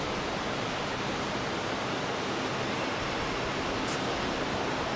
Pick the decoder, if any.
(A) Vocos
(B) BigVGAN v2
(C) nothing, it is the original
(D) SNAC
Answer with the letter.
C